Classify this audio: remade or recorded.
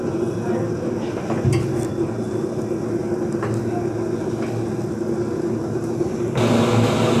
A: recorded